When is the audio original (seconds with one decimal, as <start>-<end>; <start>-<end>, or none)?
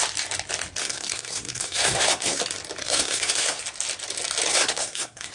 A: 0.0-0.8; 2.4-2.8; 3.6-4.5